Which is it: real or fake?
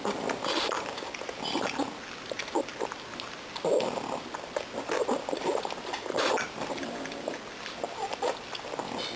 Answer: real